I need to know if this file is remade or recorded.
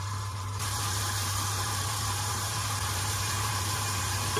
remade